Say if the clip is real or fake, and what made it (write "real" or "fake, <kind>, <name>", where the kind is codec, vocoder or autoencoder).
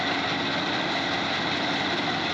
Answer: real